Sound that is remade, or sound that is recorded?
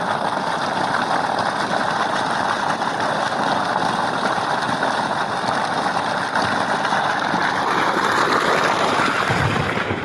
recorded